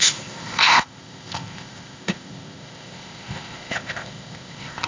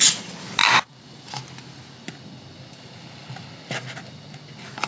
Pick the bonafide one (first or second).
second